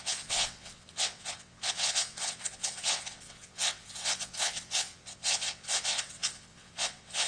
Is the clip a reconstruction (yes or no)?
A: yes